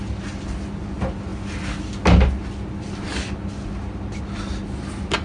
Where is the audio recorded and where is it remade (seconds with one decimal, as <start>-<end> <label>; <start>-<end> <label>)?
0.0-5.2 recorded